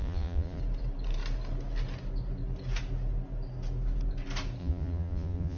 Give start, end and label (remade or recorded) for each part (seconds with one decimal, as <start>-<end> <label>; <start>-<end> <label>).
0.0-0.6 remade; 0.6-4.6 recorded; 4.6-5.6 remade